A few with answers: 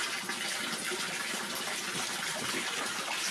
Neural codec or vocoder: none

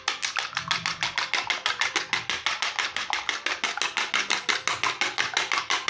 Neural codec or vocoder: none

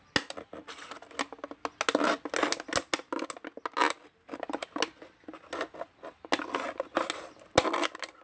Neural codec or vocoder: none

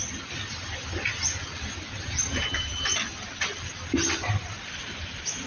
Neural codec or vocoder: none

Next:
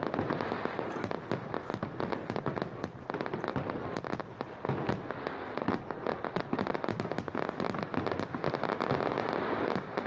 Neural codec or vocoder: none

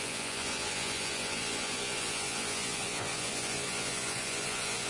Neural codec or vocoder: vocoder, Vocos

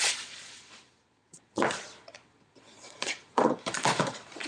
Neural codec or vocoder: vocoder, Vocos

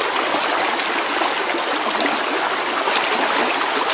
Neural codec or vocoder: none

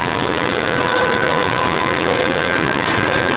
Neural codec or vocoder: vocoder, Vocos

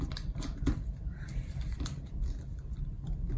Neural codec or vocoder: none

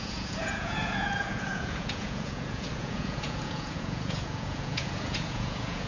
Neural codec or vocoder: vocoder, Vocos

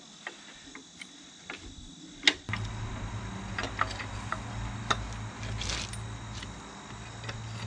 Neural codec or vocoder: none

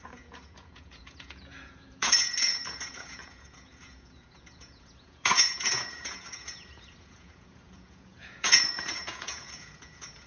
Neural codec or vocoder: vocoder, Vocos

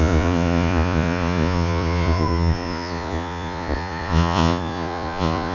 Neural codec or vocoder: vocoder, Vocos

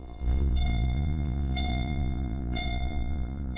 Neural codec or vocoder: vocoder, Vocos